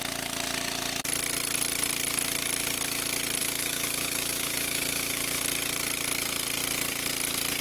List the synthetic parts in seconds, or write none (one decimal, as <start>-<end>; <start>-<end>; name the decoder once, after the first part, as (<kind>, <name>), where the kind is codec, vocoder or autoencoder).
3.4-5.4 (autoencoder, DAC-VAE)